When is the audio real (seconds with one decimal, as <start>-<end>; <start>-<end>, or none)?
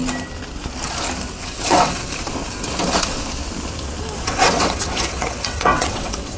0.0-1.4; 2.0-4.0